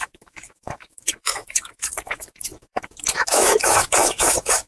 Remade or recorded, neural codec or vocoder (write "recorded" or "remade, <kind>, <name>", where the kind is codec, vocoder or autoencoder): remade, autoencoder, DAC-VAE